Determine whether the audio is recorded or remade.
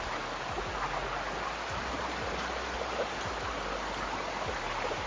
recorded